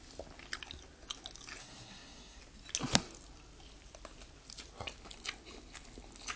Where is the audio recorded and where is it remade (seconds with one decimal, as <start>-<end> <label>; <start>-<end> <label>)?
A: 0.0-1.6 recorded; 1.6-2.4 remade; 2.4-6.4 recorded